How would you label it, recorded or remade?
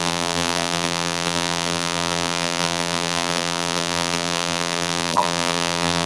remade